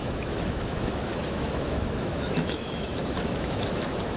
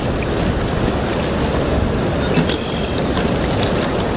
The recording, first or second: second